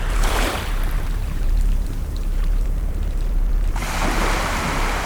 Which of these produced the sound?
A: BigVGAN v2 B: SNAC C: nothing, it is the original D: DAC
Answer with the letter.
A